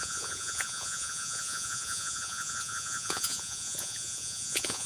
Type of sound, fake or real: fake